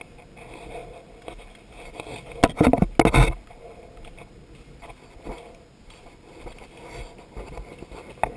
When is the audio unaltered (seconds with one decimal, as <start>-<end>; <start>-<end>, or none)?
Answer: 0.0-8.4